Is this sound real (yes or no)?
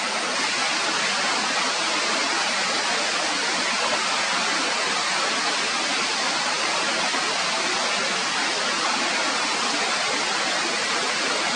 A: yes